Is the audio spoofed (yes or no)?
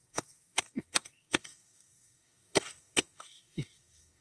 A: yes